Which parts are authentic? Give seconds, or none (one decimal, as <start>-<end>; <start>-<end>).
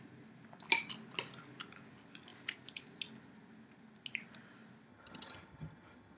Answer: 0.0-4.9